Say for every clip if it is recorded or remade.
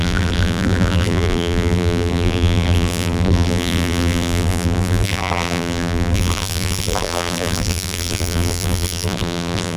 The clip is remade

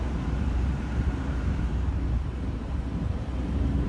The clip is remade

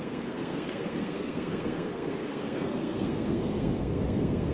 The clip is remade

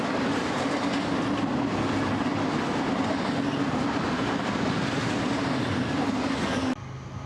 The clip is recorded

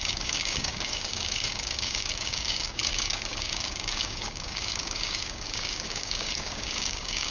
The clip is remade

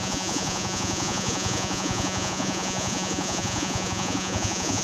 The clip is remade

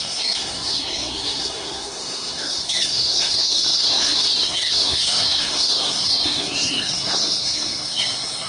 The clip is remade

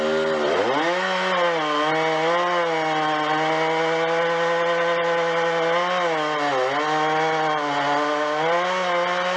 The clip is recorded